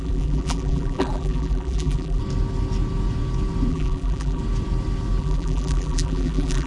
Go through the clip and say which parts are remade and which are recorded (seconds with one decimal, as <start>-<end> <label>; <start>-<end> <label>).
0.0-2.2 remade; 2.2-3.7 recorded; 3.7-4.4 remade; 4.4-5.2 recorded; 5.2-6.7 remade